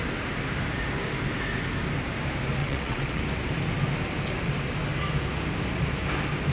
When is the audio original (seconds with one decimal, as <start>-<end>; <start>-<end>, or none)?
0.0-2.6; 3.2-6.5